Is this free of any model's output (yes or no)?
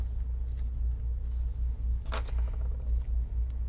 yes